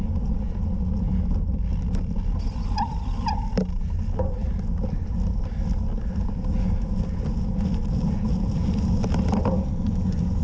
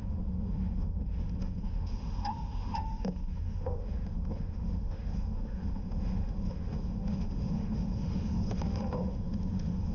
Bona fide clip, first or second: first